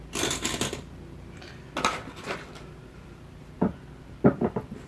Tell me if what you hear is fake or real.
real